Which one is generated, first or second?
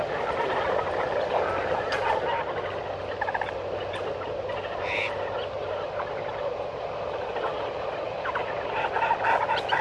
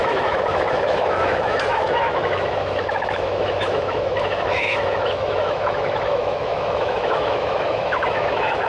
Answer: second